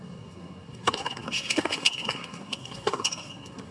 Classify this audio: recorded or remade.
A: remade